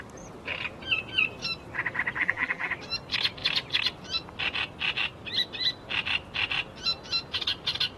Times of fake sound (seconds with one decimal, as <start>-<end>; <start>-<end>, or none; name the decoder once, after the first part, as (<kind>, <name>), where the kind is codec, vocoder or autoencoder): 2.2-2.7 (vocoder, BigVGAN v2)